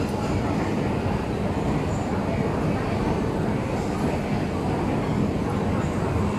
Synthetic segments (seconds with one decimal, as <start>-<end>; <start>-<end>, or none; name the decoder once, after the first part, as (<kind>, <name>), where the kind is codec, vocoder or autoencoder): none